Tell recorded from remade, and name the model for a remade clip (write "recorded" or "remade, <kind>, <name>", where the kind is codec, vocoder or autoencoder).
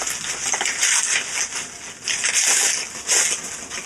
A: recorded